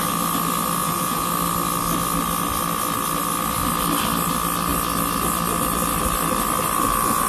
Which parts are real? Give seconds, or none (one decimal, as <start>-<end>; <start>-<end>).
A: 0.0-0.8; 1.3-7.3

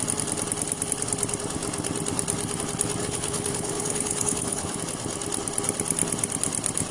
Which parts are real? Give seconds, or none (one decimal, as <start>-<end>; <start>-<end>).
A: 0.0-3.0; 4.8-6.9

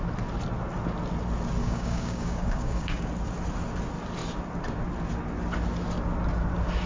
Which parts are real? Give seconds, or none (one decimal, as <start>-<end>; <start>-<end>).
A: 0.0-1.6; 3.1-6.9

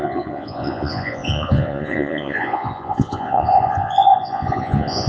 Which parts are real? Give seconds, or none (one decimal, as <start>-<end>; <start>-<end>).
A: none